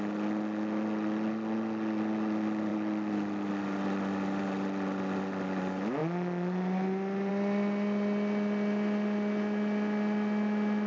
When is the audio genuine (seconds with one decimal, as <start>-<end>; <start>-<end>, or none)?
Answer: 0.0-10.9